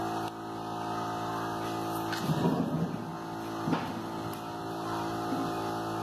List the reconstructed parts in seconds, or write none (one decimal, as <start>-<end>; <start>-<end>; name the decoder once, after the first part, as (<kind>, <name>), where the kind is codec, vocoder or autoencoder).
none